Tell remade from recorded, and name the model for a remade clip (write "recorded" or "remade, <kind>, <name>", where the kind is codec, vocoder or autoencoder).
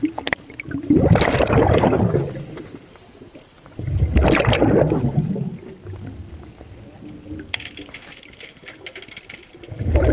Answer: recorded